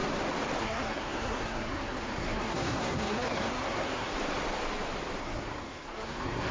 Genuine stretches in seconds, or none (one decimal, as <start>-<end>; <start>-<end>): 0.0-0.6; 4.1-5.2